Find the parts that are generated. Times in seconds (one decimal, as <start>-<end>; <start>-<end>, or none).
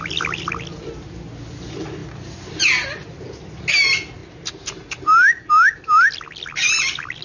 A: none